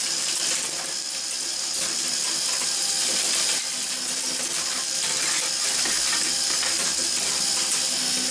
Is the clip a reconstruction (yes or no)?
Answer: no